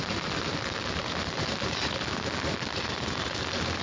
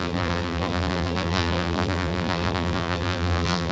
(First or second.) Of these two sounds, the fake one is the second